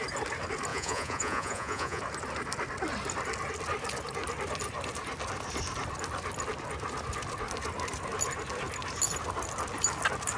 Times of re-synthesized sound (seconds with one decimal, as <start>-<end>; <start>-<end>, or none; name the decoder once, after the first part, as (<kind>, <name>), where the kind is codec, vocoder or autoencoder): 0.7-2.0 (vocoder, Vocos)